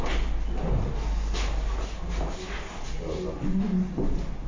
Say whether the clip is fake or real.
real